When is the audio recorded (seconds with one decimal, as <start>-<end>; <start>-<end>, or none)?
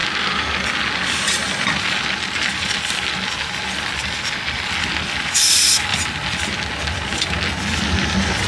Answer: 0.0-8.5